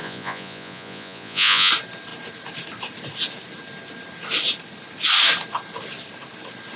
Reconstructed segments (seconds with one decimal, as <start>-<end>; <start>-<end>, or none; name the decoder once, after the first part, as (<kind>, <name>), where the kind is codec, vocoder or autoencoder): 0.0-1.7 (vocoder, Vocos)